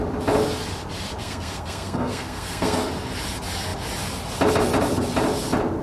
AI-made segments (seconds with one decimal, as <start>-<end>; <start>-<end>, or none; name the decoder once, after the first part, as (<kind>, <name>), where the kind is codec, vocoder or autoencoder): 1.2-2.9 (codec, SNAC)